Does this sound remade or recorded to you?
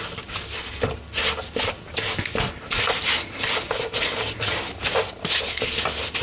recorded